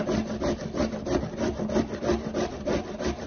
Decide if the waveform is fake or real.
fake